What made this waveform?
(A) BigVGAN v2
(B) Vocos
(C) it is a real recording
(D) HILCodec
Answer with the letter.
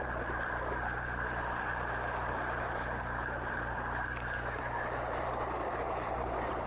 A